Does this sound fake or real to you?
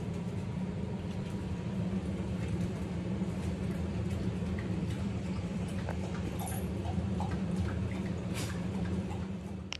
fake